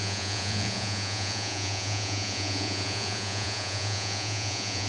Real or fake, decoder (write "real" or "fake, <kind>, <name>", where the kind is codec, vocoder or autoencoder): fake, vocoder, Vocos